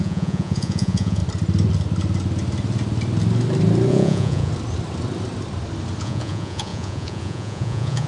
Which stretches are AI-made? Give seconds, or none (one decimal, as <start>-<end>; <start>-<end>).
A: 0.0-1.2; 3.9-4.5; 6.0-8.1